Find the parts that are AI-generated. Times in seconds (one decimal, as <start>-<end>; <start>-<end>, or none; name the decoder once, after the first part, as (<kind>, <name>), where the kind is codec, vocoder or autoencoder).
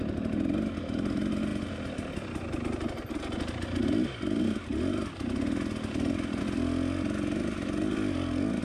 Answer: none